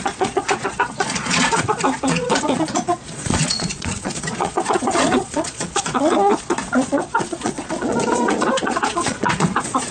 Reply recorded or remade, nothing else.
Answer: remade